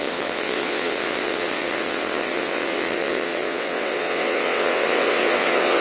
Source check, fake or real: fake